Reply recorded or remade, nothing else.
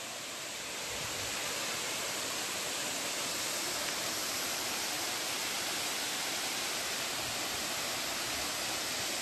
remade